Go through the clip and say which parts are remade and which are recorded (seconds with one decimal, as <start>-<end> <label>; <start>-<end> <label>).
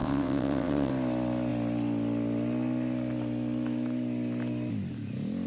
0.0-0.9 remade; 0.9-5.5 recorded